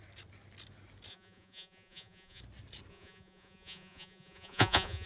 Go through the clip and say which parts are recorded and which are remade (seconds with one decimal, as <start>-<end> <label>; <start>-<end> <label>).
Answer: 0.0-1.1 recorded; 1.1-2.4 remade; 2.4-2.9 recorded; 2.9-5.1 remade